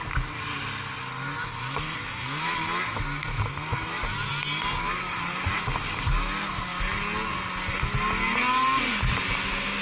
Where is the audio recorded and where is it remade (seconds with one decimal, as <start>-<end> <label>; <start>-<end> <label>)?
0.0-9.8 recorded